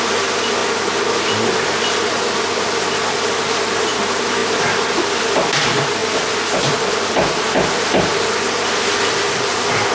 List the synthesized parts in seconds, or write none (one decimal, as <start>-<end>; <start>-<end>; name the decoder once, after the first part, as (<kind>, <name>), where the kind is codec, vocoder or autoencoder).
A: none